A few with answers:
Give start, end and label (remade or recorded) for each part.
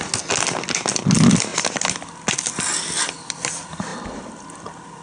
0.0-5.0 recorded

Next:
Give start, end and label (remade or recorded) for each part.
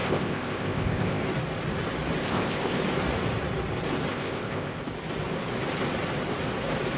0.0-1.2 remade; 1.2-2.2 recorded; 2.2-2.8 remade; 2.8-4.1 recorded; 4.1-4.8 remade; 4.8-7.0 recorded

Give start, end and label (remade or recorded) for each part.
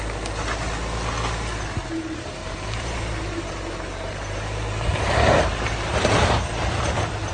0.0-2.4 recorded; 2.4-6.8 remade; 6.8-7.3 recorded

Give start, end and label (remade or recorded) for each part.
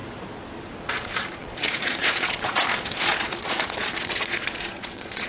0.0-0.9 recorded; 0.9-5.3 remade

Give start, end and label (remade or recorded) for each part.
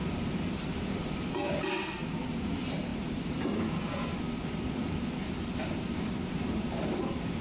0.0-1.1 remade; 1.1-2.9 recorded; 2.9-3.8 remade; 3.8-5.2 recorded; 5.2-7.4 remade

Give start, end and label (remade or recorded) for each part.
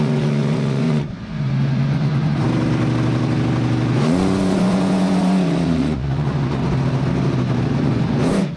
0.0-2.4 remade; 2.4-3.9 recorded; 3.9-6.6 remade; 6.6-7.7 recorded; 7.7-8.6 remade